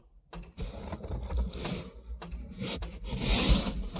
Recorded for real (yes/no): no